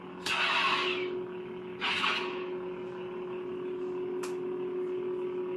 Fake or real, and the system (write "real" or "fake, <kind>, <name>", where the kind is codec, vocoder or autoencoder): real